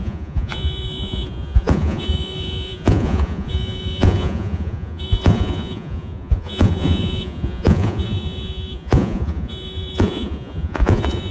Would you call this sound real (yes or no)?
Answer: no